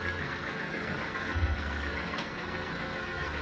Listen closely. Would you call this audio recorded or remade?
remade